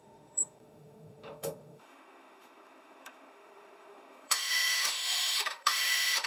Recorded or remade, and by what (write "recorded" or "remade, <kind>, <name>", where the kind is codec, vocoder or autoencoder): remade, autoencoder, DAC-VAE